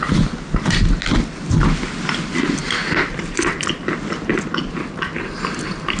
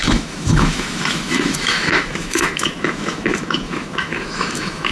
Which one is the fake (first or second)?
second